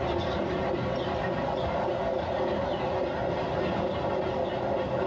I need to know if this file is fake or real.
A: real